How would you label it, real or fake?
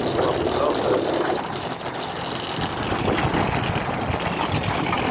real